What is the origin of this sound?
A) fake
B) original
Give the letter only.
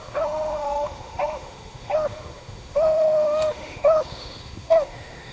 A